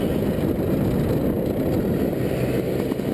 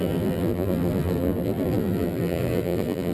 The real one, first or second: first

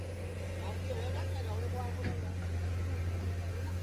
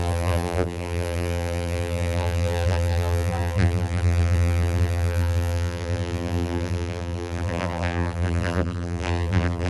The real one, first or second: first